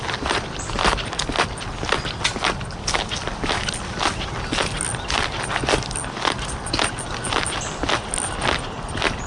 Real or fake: real